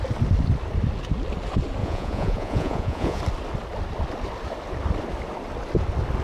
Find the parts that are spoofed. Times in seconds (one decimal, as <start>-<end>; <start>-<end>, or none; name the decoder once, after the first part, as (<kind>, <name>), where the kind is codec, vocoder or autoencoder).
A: 1.8-3.2 (vocoder, Vocos)